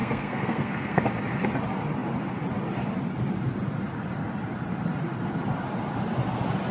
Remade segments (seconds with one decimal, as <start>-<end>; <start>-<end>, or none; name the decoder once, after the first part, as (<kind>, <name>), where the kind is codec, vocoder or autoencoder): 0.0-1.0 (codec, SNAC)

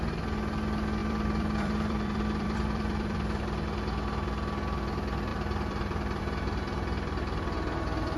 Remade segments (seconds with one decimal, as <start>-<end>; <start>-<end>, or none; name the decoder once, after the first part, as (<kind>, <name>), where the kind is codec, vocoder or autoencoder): 1.0-3.4 (vocoder, BigVGAN v2); 5.3-6.2

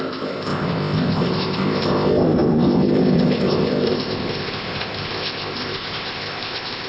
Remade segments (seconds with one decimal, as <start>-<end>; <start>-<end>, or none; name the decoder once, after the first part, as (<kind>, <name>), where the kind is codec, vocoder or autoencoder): 0.0-6.9 (codec, ZipCodec)